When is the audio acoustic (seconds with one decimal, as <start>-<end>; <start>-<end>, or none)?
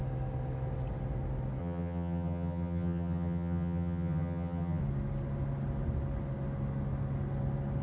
0.0-1.6; 4.8-7.8